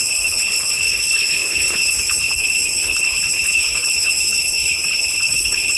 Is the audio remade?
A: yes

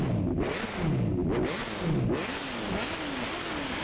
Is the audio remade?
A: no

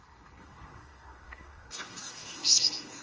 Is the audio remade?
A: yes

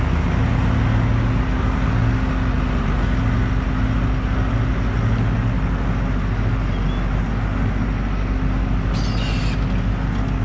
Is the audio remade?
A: no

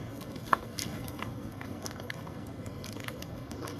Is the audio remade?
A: yes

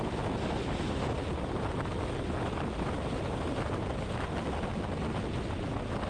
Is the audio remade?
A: no